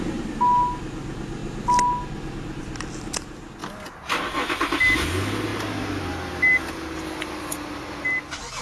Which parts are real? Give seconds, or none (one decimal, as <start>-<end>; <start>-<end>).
0.0-8.6